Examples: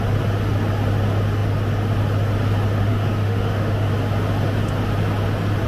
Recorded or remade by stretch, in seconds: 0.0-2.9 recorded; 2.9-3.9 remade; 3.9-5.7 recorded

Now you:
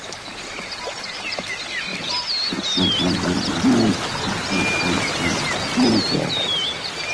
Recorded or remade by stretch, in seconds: 0.0-7.1 recorded

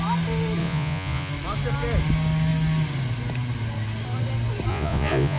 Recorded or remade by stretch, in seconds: 0.0-0.6 recorded; 0.6-1.3 remade; 1.3-4.7 recorded; 4.7-5.4 remade